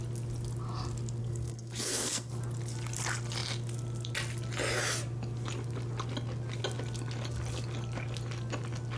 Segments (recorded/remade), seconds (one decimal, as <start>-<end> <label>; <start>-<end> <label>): 0.0-1.2 recorded; 1.2-2.3 remade; 2.3-9.0 recorded